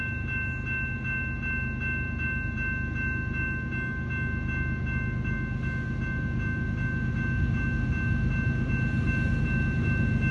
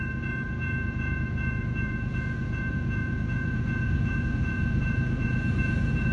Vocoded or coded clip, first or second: second